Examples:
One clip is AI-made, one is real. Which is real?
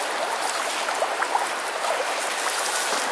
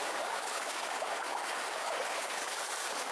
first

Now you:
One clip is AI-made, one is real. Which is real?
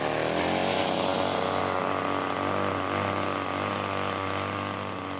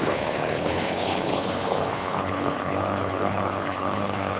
first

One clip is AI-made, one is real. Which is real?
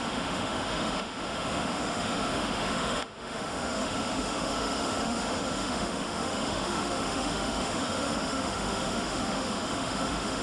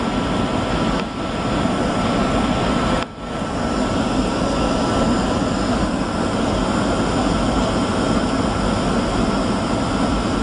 second